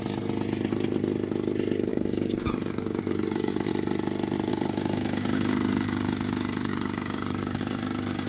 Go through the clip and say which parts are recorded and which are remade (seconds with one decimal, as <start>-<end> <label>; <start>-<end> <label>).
0.0-1.9 recorded; 1.9-3.7 remade; 3.7-4.5 recorded; 4.5-8.3 remade